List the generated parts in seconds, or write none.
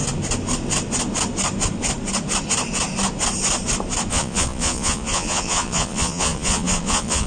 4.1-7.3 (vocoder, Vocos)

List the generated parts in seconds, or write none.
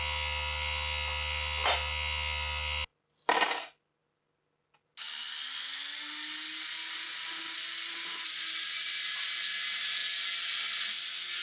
none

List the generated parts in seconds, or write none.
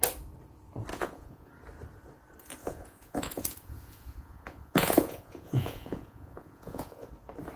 0.9-1.5 (vocoder, Vocos); 2.6-7.1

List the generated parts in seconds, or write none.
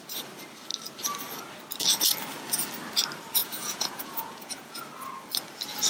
3.4-4.8 (vocoder, Vocos)